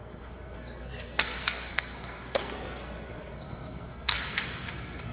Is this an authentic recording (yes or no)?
no